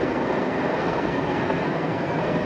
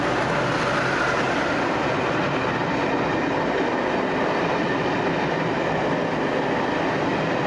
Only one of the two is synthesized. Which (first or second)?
first